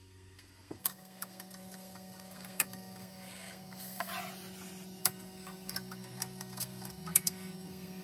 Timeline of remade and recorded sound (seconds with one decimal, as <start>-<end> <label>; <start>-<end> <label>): 0.0-4.1 remade; 4.1-5.0 recorded; 5.0-8.0 remade